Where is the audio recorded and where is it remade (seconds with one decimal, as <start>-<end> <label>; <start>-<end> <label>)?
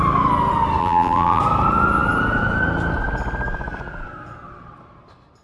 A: 0.0-0.8 recorded; 0.8-1.4 remade; 1.4-5.4 recorded